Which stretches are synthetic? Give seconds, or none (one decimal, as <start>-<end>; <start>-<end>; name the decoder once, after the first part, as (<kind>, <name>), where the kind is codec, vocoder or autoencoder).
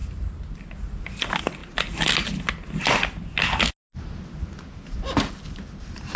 1.0-1.6 (vocoder, BigVGAN v2); 5.3-6.2